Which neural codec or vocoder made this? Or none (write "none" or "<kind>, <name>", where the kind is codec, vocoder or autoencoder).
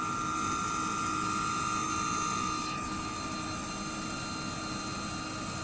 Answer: none